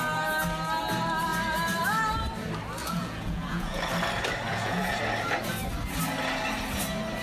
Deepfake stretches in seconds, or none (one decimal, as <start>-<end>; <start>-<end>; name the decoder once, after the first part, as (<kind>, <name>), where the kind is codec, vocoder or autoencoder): 2.8-3.8 (vocoder, Vocos); 4.5-5.0

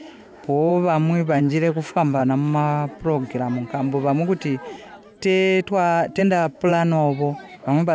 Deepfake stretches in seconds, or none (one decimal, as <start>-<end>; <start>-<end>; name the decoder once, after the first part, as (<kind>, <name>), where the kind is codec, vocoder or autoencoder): 0.0-0.7 (autoencoder, DAC-VAE); 1.4-2.2; 6.2-6.7; 7.5-7.9

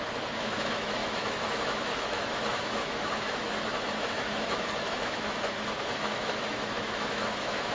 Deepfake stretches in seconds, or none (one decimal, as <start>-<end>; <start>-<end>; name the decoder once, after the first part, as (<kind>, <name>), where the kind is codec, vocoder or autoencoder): 0.0-7.7 (autoencoder, DAC-VAE)

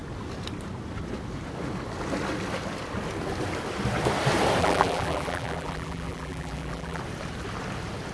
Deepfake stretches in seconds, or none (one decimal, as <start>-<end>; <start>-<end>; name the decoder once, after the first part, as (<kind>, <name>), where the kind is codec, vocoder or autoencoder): 4.6-7.0 (vocoder, BigVGAN v2)

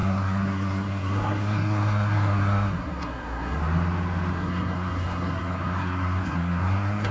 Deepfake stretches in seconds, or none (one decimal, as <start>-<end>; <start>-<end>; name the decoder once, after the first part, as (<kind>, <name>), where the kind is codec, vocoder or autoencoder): 0.0-3.6 (codec, SNAC); 4.3-7.1

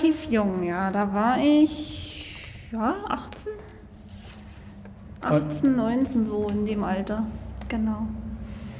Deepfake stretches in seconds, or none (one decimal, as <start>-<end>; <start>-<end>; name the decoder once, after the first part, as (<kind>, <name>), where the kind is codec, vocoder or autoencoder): 0.0-1.1 (codec, DAC); 2.9-3.7

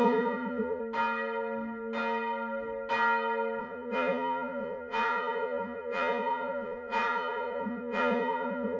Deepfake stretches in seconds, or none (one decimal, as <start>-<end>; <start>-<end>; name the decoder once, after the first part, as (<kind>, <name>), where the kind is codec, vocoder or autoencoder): 0.0-0.8 (vocoder, Vocos); 3.6-8.8